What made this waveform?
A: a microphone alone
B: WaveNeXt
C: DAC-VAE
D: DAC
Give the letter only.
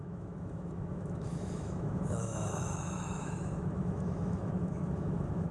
C